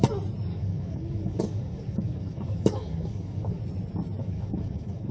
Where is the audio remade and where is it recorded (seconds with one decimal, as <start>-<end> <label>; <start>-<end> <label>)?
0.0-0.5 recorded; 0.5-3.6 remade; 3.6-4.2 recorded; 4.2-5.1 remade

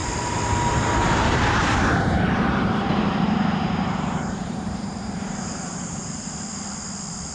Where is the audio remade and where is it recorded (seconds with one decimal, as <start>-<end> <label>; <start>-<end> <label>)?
0.0-1.6 recorded; 1.6-6.0 remade; 6.0-7.3 recorded

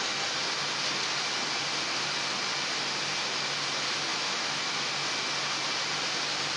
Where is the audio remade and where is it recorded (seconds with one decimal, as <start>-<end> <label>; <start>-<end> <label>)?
0.0-4.1 recorded; 4.1-4.9 remade; 4.9-6.6 recorded